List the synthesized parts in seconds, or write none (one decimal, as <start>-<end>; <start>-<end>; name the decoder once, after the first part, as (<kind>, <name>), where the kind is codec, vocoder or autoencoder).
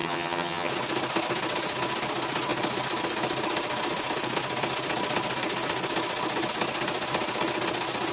0.0-0.7 (vocoder, HiFi-GAN)